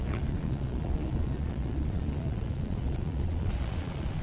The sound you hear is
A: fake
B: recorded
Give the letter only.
A